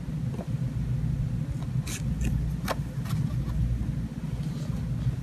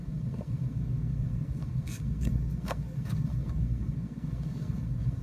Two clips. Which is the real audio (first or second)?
first